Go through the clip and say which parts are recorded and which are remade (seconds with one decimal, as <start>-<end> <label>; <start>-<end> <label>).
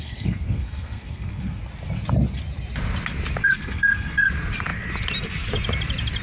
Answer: 0.0-1.6 remade; 1.6-3.4 recorded; 3.4-4.3 remade; 4.3-6.2 recorded